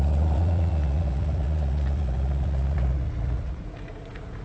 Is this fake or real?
fake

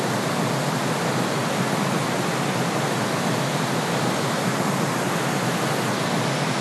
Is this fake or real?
real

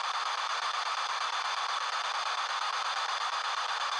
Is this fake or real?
real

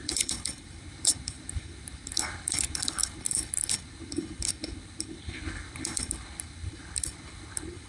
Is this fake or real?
fake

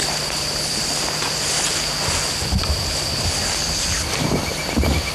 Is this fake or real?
real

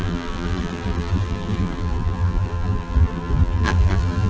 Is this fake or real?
fake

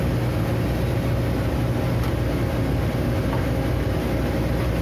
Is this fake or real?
real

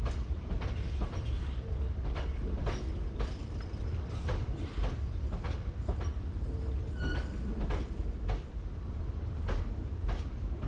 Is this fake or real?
real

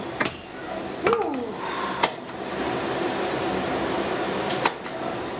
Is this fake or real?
real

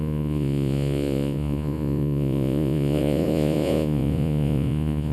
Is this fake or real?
fake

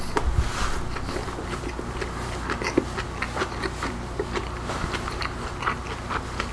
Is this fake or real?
real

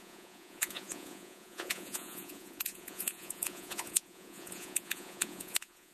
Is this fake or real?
fake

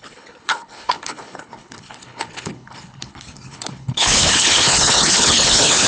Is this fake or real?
fake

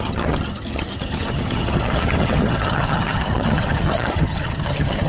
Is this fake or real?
fake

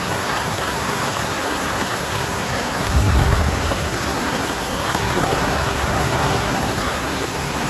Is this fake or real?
fake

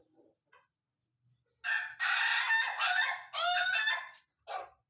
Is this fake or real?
real